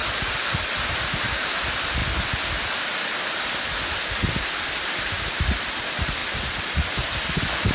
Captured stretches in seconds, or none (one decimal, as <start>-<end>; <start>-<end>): 0.0-0.5; 2.0-4.7